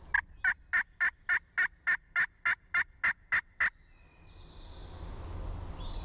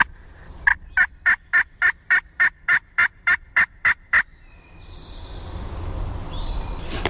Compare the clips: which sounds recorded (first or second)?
first